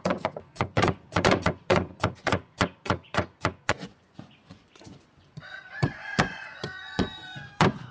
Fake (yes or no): yes